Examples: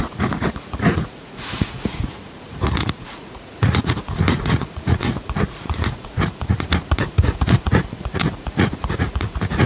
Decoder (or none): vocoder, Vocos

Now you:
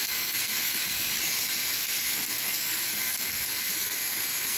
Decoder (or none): codec, SNAC